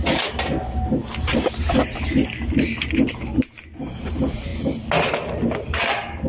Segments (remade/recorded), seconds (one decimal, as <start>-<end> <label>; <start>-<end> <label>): 0.0-6.3 recorded